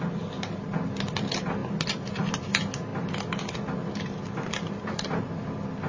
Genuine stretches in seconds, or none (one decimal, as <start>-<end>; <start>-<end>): 0.0-5.9